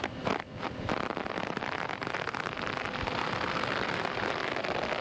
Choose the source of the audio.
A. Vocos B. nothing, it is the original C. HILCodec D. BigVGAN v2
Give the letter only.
D